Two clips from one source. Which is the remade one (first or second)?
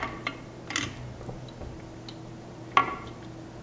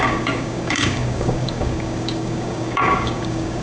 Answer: second